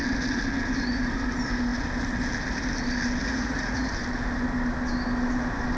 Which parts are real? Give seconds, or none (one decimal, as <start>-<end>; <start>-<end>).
0.0-3.2; 3.9-5.8